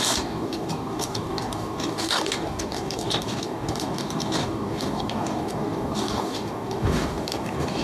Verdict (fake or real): fake